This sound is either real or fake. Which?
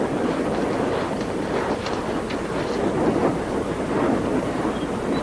real